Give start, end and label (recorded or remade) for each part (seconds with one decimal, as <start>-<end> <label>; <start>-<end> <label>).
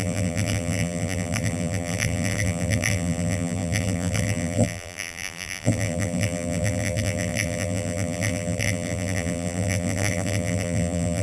0.0-11.2 remade